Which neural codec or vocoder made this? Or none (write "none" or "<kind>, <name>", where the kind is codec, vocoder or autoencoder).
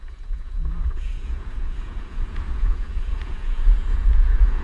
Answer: vocoder, Vocos